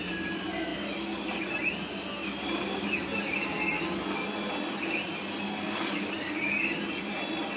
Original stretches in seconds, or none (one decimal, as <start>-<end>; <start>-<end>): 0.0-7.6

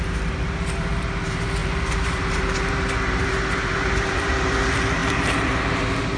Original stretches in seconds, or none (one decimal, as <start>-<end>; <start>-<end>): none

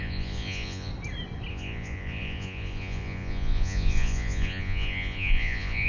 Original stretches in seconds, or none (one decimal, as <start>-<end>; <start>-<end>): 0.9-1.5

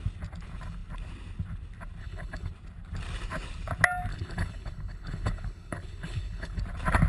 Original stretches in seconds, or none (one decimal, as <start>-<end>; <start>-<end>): 0.0-2.0; 2.5-4.1; 6.6-7.1